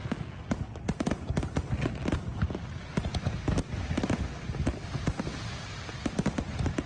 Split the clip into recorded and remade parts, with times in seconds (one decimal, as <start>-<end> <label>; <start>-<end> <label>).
0.0-6.9 recorded